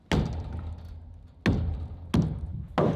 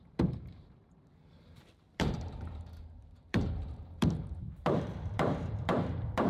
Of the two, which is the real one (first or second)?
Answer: first